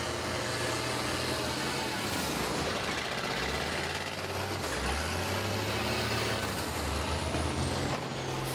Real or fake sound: real